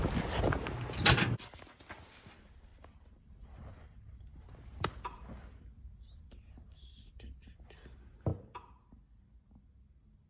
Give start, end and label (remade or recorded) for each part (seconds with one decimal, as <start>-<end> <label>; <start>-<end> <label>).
0.0-2.7 recorded; 2.7-4.2 remade; 4.2-10.3 recorded